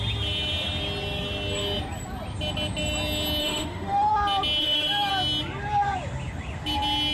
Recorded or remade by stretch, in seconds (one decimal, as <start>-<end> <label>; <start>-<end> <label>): 0.0-3.4 recorded; 3.4-4.1 remade; 4.1-4.6 recorded; 4.6-5.1 remade; 5.1-7.1 recorded

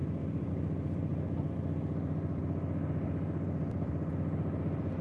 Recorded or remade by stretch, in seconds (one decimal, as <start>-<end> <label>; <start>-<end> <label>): 0.0-5.0 remade

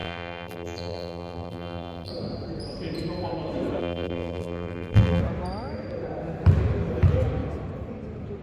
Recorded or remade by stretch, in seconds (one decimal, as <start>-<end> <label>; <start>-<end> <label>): 0.0-2.1 remade; 2.1-3.8 recorded; 3.8-5.2 remade; 5.2-8.4 recorded

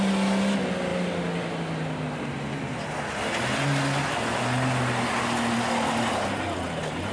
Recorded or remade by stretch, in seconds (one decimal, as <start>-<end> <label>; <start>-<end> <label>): 0.0-7.1 recorded

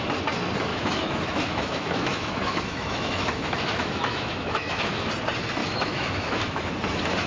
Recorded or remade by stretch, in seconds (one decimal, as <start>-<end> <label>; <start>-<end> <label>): 0.0-0.7 recorded; 0.7-5.1 remade; 5.1-5.6 recorded; 5.6-6.6 remade; 6.6-7.3 recorded

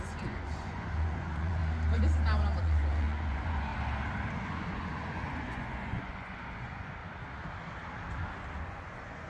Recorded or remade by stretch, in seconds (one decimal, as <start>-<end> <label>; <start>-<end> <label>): 0.0-1.6 remade; 1.6-2.6 recorded; 2.6-3.7 remade; 3.7-4.3 recorded; 4.3-7.0 remade; 7.0-8.6 recorded; 8.6-9.3 remade